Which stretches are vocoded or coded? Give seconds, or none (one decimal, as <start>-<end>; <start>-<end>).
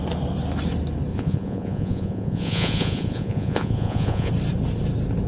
1.1-4.3